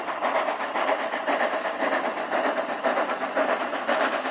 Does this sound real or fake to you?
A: fake